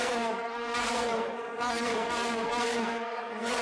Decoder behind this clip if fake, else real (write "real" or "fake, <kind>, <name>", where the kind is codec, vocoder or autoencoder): fake, codec, SNAC